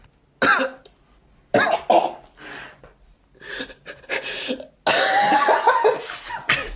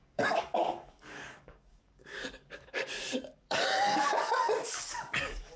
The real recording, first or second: first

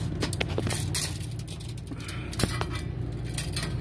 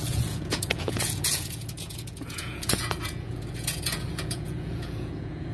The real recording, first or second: first